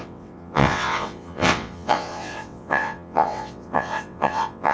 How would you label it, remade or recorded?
remade